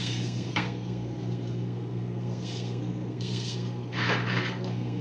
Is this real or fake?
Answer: fake